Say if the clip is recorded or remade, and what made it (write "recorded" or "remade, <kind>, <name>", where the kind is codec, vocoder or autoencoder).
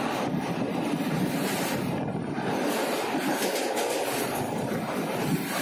recorded